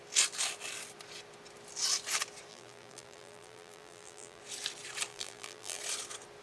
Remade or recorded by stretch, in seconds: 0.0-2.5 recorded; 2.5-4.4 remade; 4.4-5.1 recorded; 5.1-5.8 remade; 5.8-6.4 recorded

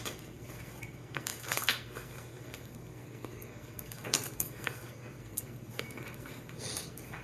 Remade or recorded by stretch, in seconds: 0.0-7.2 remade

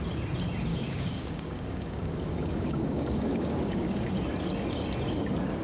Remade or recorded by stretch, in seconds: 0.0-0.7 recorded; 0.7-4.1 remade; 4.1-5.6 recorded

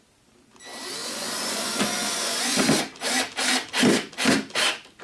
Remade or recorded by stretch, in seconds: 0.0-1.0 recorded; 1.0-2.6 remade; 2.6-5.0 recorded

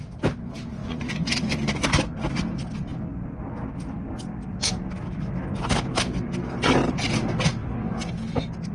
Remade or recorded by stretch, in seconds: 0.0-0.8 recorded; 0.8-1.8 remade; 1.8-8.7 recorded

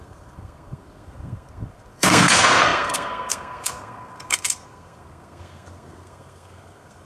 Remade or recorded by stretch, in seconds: 0.0-7.1 remade

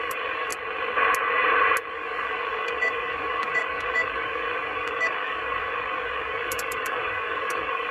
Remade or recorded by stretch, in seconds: 0.0-0.5 remade; 0.5-1.9 recorded; 1.9-7.9 remade

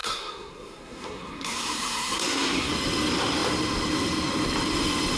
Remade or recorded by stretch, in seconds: 0.0-2.7 remade; 2.7-5.2 recorded